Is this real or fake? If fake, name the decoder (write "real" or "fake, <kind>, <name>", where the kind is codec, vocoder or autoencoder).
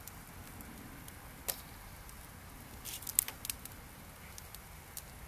real